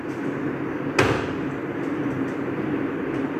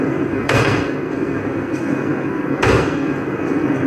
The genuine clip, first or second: first